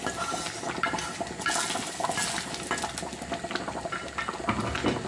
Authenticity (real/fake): real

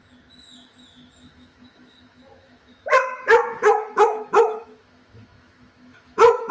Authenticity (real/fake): fake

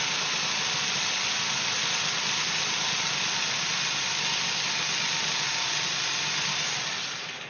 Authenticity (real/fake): real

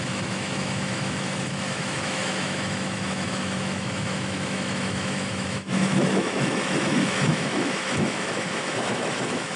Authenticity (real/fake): fake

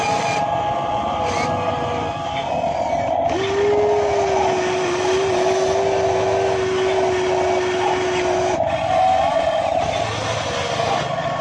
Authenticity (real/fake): real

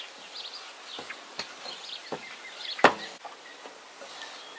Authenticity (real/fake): real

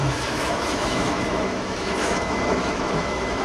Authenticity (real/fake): fake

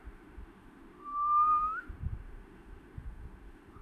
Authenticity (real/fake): fake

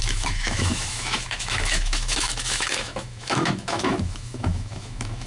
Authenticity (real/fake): fake